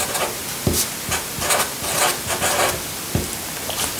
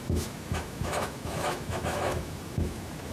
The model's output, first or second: second